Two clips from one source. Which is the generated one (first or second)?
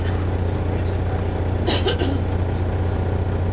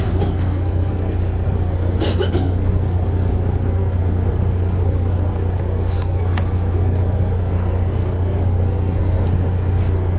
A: second